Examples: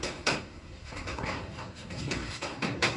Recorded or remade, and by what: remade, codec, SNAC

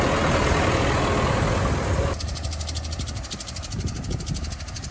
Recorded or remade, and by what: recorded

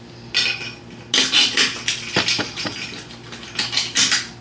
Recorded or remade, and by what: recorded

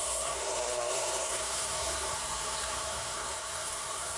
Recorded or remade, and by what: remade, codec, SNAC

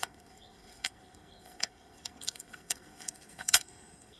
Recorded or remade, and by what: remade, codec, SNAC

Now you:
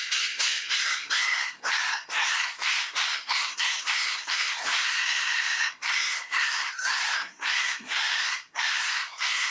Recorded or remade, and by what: remade, codec, SNAC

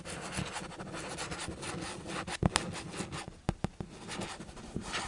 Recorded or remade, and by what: recorded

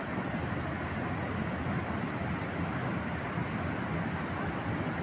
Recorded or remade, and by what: recorded